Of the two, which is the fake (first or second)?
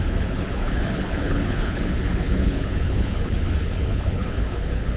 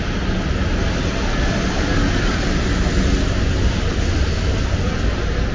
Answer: first